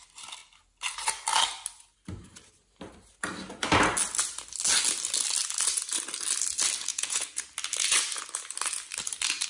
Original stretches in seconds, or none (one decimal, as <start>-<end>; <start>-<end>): 0.0-6.9; 7.4-9.5